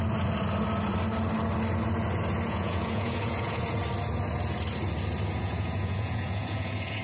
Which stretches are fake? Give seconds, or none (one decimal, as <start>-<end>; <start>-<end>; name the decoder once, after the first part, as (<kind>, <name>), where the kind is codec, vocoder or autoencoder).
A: 2.5-3.8 (vocoder, Vocos); 5.4-7.0